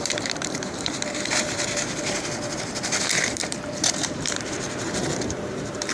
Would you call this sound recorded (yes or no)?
no